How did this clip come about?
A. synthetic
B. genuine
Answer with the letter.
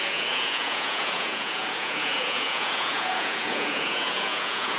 A